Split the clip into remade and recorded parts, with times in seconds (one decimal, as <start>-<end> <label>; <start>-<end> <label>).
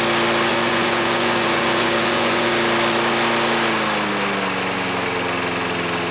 0.0-0.5 recorded; 0.5-2.5 remade; 2.5-6.1 recorded